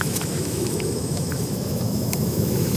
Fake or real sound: fake